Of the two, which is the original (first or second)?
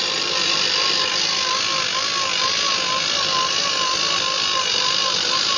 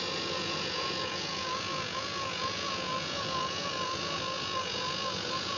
first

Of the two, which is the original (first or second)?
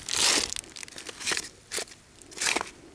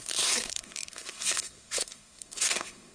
first